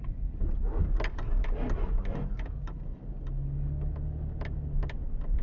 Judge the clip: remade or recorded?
recorded